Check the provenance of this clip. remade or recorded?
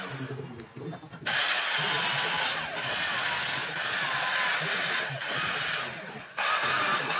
recorded